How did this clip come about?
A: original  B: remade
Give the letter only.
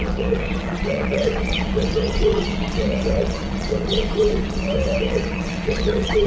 B